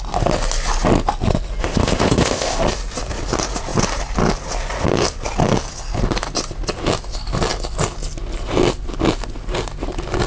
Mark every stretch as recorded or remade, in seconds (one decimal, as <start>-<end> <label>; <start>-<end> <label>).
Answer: 0.0-1.6 recorded; 1.6-2.6 remade; 2.6-10.3 recorded